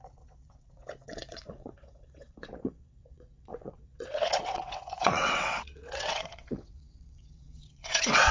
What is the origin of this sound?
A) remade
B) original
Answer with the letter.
A